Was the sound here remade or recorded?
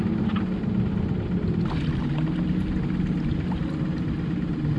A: recorded